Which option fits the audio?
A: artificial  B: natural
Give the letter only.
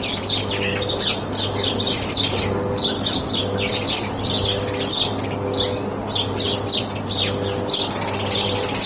B